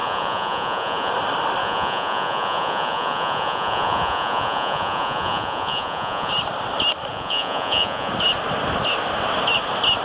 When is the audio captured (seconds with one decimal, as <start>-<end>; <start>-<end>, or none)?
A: 1.1-1.6; 6.3-7.1; 8.1-10.0